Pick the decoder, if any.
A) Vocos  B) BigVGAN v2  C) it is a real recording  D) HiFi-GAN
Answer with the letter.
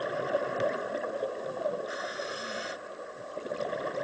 C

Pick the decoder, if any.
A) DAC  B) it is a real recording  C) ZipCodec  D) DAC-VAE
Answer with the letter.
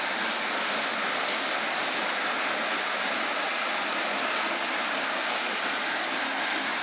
B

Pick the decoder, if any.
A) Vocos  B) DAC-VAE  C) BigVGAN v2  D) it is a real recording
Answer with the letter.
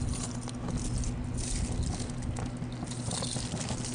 D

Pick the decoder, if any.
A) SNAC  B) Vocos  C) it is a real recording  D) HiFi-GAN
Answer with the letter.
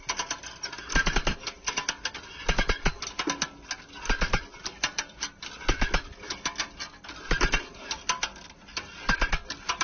C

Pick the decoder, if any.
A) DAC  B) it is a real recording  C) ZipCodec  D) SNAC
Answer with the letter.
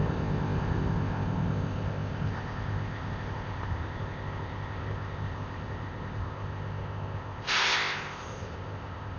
C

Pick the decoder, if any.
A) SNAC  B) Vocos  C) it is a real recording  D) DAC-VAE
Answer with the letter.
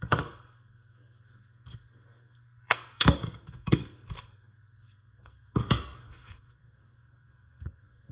A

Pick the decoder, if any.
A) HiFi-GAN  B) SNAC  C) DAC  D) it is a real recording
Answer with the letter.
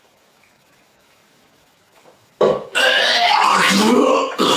C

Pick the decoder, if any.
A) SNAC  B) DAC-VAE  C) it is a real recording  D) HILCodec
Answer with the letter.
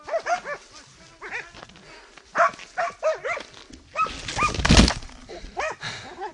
C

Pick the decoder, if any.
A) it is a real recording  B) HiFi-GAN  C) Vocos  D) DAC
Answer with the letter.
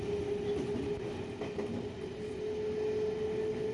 A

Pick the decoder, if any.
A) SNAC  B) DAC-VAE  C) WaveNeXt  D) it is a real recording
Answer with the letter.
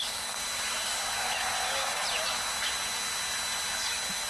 D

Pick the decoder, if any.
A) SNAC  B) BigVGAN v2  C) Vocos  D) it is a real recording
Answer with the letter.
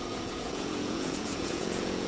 C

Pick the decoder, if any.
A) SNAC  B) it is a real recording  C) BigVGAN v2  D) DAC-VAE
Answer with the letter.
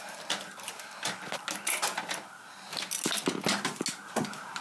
B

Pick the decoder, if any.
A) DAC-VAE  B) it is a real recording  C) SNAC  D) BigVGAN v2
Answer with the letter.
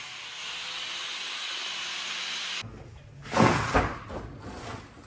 B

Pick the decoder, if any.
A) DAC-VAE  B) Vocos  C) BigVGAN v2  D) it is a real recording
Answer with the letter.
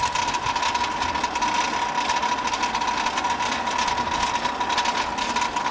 D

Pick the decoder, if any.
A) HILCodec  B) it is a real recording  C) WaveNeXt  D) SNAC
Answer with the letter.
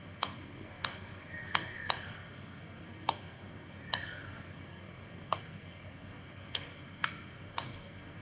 D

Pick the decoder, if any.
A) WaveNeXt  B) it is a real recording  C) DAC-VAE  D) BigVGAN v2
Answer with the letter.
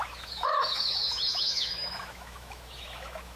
C